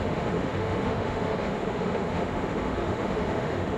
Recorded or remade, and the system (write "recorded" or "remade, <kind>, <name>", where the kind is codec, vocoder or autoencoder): remade, autoencoder, DAC-VAE